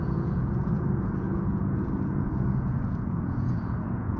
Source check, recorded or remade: remade